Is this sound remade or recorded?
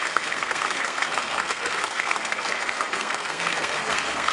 remade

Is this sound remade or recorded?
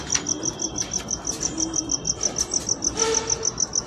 recorded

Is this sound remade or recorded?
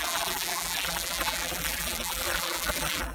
remade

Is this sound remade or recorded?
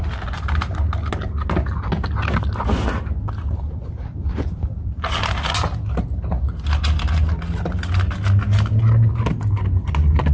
recorded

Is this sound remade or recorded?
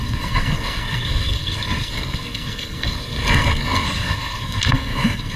remade